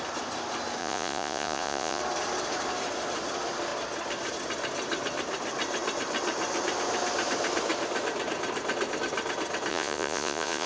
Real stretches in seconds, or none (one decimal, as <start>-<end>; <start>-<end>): 0.0-0.8; 2.0-9.7